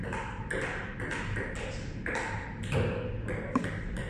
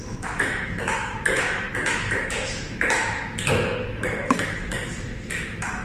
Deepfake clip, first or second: second